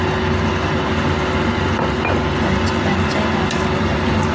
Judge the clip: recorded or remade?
recorded